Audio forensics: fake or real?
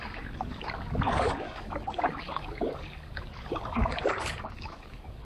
fake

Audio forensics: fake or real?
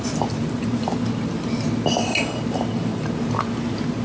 real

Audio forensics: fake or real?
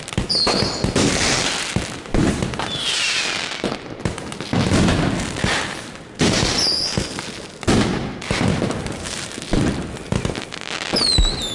real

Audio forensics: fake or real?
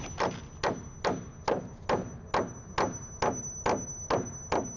real